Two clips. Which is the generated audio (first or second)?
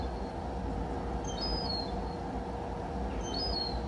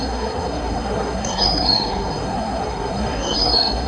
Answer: second